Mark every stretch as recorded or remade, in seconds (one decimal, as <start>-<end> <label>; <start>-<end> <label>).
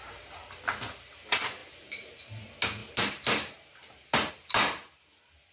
0.0-1.6 recorded; 1.6-2.2 remade; 2.2-2.8 recorded; 2.8-4.3 remade; 4.3-5.5 recorded